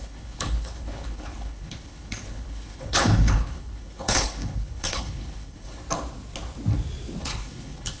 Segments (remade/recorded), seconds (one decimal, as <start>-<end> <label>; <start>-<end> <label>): 0.0-5.8 remade; 5.8-7.2 recorded; 7.2-8.0 remade